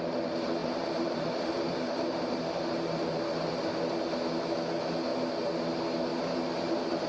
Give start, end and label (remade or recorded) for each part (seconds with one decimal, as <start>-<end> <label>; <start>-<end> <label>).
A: 0.0-0.6 recorded; 0.6-3.9 remade; 3.9-6.1 recorded; 6.1-7.1 remade